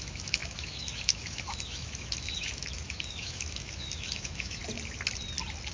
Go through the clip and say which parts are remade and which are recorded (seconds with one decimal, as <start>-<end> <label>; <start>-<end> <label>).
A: 0.0-4.6 remade; 4.6-5.7 recorded